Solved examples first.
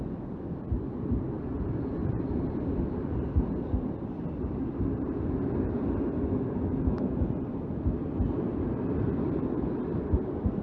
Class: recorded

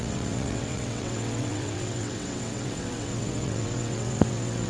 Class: remade